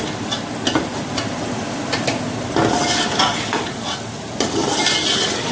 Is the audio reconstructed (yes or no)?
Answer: no